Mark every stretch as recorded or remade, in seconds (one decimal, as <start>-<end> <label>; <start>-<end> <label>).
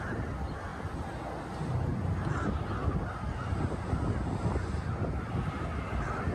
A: 0.0-6.3 recorded